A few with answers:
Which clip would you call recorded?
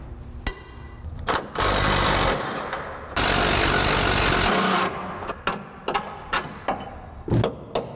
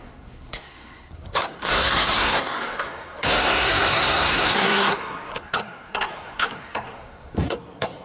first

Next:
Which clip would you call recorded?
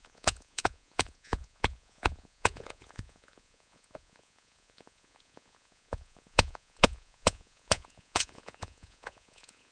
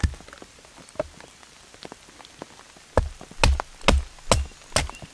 second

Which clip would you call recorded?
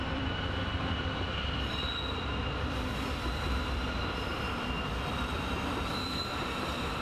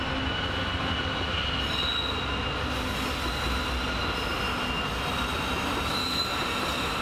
second